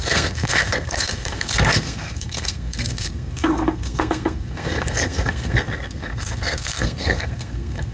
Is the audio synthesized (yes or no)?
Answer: yes